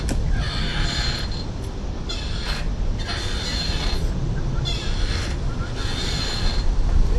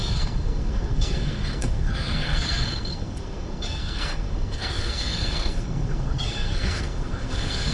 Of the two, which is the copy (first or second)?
second